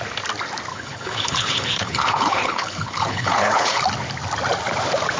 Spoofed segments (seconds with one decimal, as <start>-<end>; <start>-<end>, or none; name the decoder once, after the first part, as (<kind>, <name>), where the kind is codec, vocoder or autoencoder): 0.7-3.8 (codec, HILCodec)